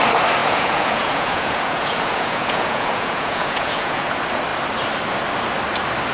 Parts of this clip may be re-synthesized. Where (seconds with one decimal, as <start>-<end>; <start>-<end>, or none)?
0.4-4.1